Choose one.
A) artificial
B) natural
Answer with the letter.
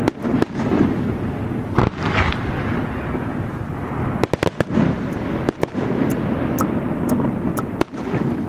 B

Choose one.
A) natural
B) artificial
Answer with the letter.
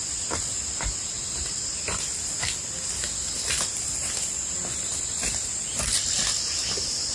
A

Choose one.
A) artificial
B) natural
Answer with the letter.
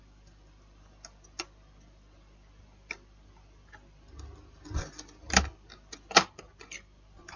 B